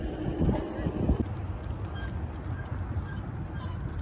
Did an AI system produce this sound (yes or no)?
no